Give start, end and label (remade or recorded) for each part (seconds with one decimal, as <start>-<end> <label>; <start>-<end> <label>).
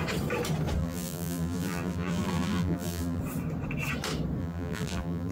0.0-0.8 recorded; 0.8-3.2 remade; 3.2-4.4 recorded; 4.4-5.3 remade